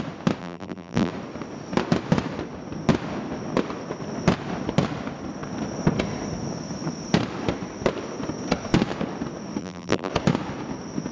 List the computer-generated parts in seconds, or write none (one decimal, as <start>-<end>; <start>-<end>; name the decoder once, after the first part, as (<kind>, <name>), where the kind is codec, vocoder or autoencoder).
0.4-1.1 (vocoder, BigVGAN v2); 9.6-10.1